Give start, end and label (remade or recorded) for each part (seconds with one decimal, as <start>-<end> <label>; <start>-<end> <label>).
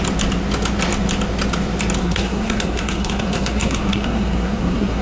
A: 0.0-2.0 recorded; 2.0-5.0 remade